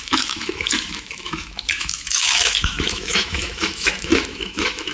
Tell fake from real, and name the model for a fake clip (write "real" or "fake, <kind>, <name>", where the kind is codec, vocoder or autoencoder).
fake, autoencoder, DAC-VAE